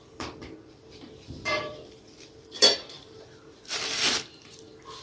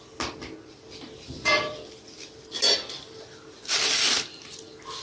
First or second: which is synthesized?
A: first